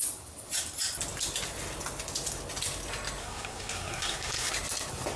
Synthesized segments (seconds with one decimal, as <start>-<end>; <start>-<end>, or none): 3.2-4.5